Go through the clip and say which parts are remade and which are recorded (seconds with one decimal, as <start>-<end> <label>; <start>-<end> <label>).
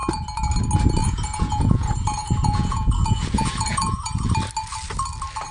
0.0-1.0 recorded; 1.0-4.3 remade; 4.3-5.5 recorded